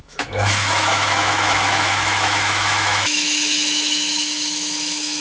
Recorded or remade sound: remade